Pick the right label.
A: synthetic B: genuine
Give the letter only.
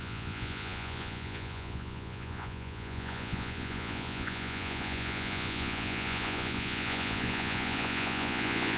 A